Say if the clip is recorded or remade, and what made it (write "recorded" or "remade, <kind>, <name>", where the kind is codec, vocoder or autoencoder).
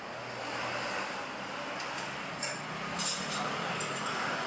recorded